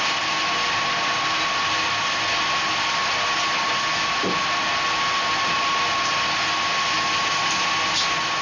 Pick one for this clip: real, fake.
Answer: real